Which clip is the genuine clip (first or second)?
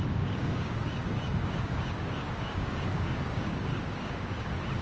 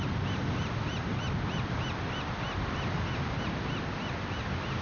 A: second